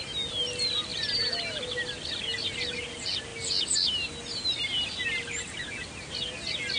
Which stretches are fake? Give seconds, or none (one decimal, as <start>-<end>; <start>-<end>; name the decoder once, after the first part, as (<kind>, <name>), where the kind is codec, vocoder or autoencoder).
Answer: none